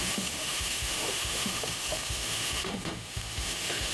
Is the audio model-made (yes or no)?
yes